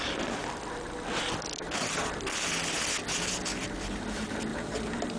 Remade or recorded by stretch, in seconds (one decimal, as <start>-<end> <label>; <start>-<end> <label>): 0.0-4.5 recorded; 4.5-5.2 remade